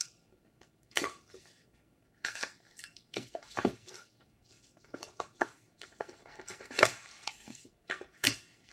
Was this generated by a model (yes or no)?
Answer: yes